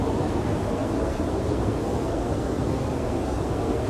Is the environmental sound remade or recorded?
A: remade